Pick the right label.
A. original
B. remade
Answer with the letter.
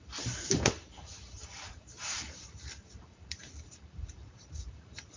B